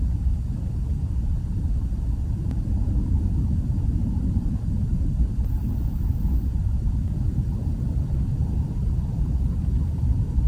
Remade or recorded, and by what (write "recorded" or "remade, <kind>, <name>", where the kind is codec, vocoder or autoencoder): recorded